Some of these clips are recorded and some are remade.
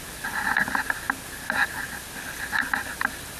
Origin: recorded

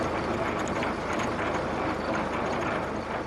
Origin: recorded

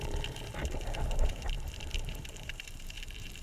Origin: remade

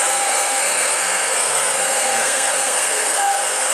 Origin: remade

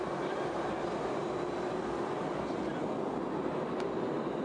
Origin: recorded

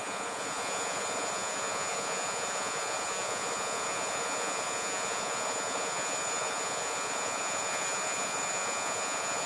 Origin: remade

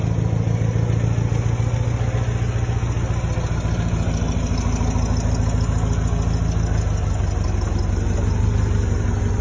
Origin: recorded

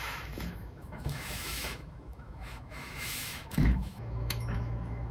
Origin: remade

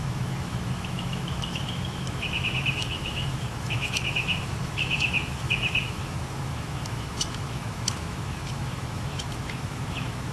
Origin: remade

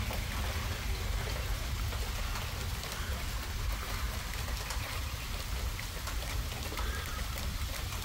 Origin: recorded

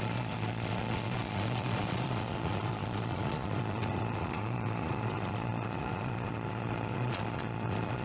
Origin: remade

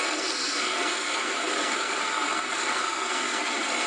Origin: remade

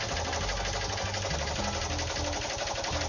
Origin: recorded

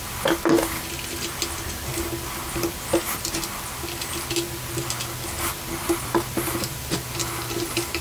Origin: recorded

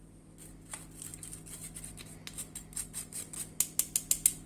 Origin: recorded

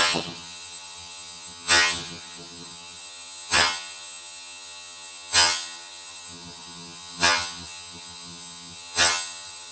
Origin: remade